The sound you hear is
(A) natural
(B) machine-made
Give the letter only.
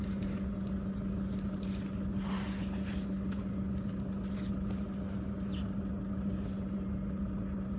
A